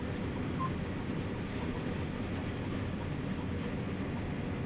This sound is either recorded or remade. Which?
recorded